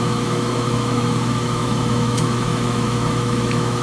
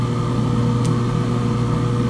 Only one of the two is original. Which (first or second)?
second